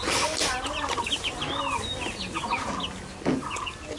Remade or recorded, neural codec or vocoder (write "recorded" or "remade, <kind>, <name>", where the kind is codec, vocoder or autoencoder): recorded